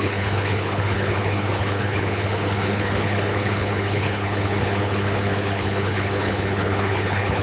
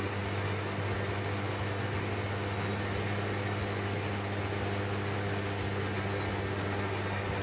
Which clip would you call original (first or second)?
second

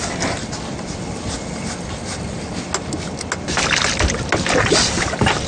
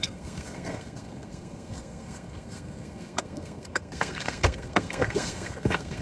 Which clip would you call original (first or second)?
first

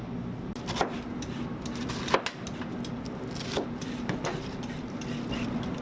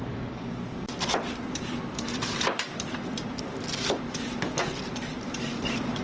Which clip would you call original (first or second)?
first